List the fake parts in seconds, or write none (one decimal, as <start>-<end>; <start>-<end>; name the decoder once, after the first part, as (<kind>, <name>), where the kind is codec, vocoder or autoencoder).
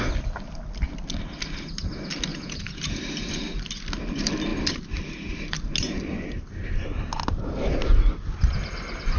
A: 2.3-3.0 (vocoder, Vocos)